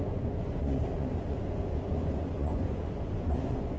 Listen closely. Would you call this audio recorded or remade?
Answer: remade